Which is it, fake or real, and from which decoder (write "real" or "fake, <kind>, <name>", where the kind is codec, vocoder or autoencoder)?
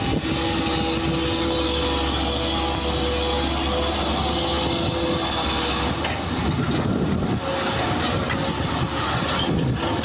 real